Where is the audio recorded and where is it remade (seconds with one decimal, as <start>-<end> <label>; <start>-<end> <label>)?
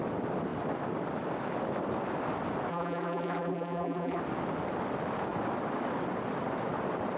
0.0-2.7 recorded; 2.7-4.2 remade; 4.2-7.2 recorded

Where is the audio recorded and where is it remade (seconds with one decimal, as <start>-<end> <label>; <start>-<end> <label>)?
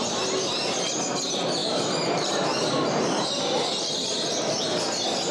0.0-1.6 recorded; 1.6-4.8 remade; 4.8-5.3 recorded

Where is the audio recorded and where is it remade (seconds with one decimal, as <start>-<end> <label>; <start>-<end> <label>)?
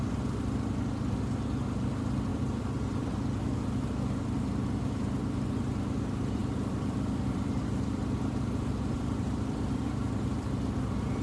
0.0-2.3 recorded; 2.3-3.4 remade; 3.4-6.4 recorded; 6.4-9.9 remade; 9.9-11.2 recorded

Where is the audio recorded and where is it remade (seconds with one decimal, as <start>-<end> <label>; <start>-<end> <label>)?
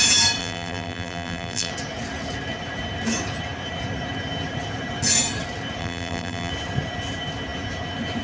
0.0-0.4 recorded; 0.4-1.7 remade; 1.7-5.8 recorded; 5.8-6.5 remade; 6.5-8.2 recorded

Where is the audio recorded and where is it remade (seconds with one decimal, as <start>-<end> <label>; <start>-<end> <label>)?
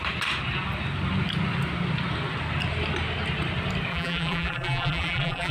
0.0-3.9 recorded; 3.9-5.5 remade